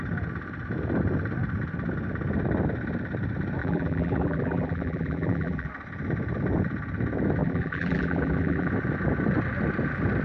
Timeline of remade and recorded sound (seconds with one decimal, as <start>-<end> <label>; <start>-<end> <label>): 0.0-3.6 recorded; 3.6-5.7 remade; 5.7-7.4 recorded; 7.4-8.7 remade; 8.7-10.2 recorded